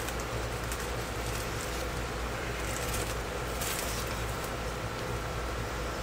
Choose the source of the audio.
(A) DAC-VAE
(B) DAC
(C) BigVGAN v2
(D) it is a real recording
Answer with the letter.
C